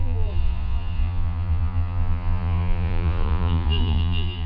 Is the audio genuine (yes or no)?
no